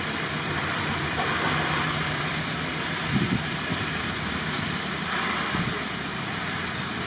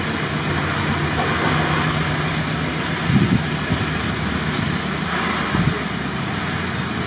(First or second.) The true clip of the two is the second